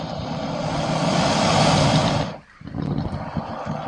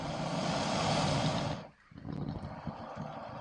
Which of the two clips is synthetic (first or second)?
first